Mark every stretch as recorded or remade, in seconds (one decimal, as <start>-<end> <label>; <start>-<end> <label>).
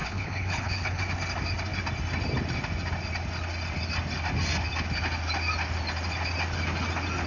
0.0-1.0 remade; 1.0-7.3 recorded